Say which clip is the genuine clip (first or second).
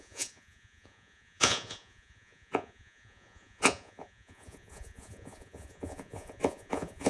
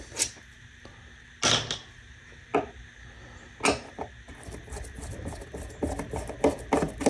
second